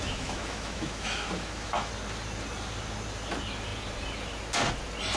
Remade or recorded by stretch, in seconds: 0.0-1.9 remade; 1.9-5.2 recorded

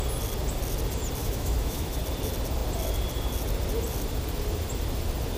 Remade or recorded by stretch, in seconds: 0.0-1.2 recorded; 1.2-2.0 remade; 2.0-5.4 recorded

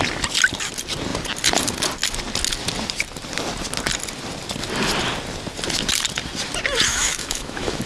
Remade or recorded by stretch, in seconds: 0.0-6.9 recorded; 6.9-7.9 remade

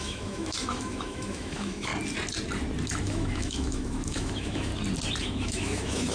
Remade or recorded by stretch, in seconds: 0.0-1.9 remade; 1.9-3.0 recorded; 3.0-4.7 remade; 4.7-5.2 recorded; 5.2-6.1 remade